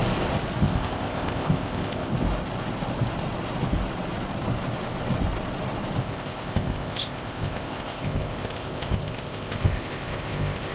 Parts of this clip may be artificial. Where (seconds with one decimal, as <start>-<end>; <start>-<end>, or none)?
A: 0.6-2.1; 6.0-10.7